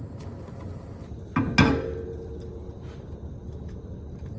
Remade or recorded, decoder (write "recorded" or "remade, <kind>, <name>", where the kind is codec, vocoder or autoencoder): recorded